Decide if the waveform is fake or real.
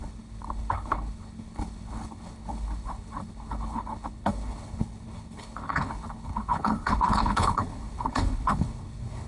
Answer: fake